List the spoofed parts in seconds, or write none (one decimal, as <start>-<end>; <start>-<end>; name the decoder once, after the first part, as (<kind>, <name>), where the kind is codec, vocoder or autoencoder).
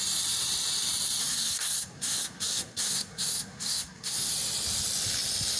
1.2-4.3 (codec, SNAC)